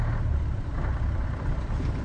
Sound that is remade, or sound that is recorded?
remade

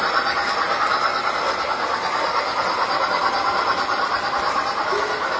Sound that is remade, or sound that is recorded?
recorded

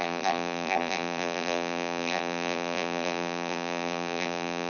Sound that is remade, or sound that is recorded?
remade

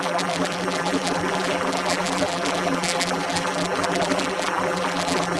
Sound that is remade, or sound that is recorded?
remade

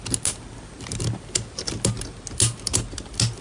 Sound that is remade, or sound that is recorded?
recorded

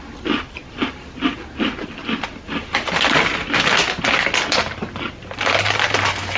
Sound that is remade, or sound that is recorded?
recorded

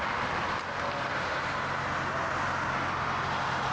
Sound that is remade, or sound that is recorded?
recorded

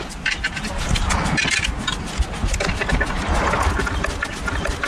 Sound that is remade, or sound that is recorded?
recorded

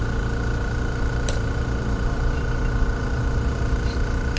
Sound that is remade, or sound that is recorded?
remade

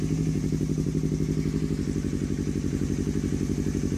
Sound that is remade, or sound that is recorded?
recorded